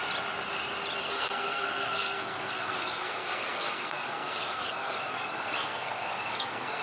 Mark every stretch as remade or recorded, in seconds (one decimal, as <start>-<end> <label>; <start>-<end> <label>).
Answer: 0.0-1.0 recorded; 1.0-6.8 remade